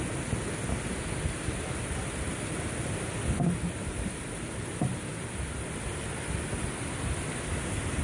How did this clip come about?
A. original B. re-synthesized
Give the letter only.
A